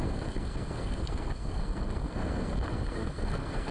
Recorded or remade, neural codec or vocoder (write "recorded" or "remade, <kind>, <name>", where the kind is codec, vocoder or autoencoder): remade, codec, SNAC